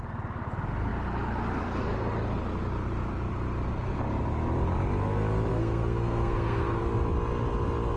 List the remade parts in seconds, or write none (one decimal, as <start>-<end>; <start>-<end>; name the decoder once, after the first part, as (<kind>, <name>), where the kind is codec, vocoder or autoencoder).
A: 5.5-6.8 (codec, SNAC)